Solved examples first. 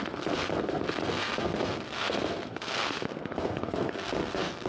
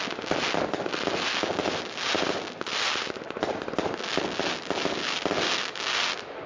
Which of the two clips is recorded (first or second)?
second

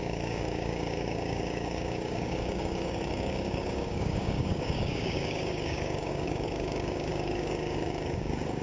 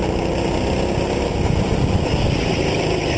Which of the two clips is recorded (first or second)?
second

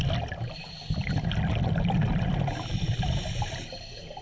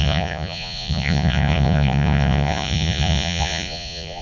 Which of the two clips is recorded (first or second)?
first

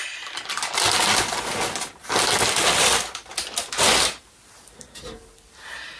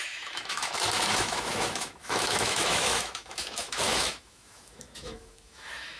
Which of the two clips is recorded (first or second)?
first